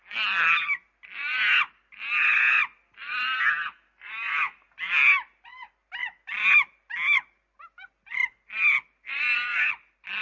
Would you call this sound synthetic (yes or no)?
no